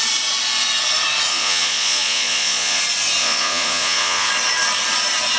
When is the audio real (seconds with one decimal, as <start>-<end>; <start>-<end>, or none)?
0.0-1.3; 2.8-3.2; 4.3-5.4

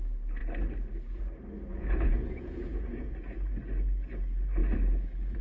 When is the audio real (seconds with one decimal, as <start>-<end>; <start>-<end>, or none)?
0.0-1.7; 3.1-5.4

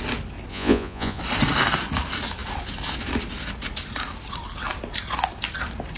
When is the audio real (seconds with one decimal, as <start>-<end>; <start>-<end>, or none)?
0.0-0.5; 1.2-6.0

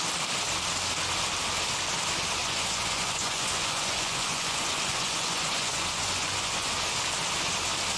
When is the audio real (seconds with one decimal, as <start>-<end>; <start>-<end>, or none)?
0.0-2.4; 6.7-8.0

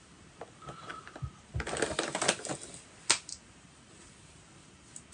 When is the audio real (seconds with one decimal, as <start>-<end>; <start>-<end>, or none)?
0.0-5.1

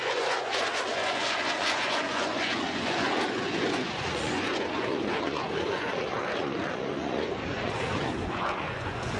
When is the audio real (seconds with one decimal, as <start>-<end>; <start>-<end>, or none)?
none

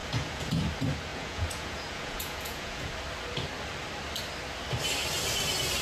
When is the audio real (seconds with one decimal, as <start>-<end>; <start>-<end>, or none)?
0.5-1.1; 2.9-5.8

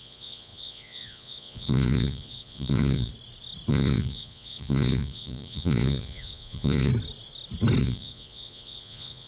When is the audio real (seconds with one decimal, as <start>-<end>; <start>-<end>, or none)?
3.1-3.7; 6.9-7.8